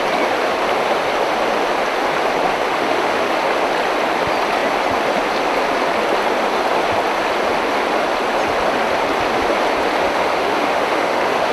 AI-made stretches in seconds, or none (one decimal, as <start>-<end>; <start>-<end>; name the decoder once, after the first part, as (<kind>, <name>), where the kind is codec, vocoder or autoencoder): 2.7-3.3 (autoencoder, DAC-VAE); 10.0-11.5